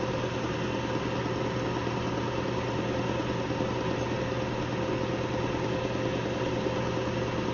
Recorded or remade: recorded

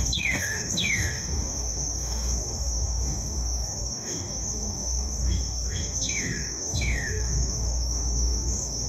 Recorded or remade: remade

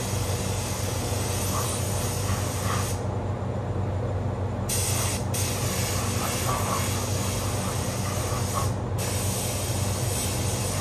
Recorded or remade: recorded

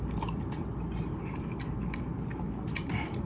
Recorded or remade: recorded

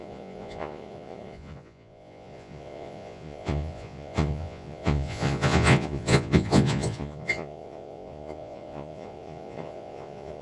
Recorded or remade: remade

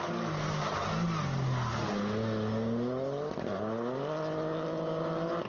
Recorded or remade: recorded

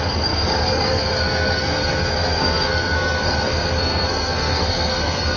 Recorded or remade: remade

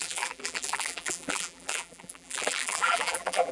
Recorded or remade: remade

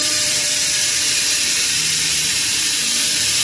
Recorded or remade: remade